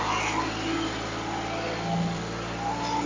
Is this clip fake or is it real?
real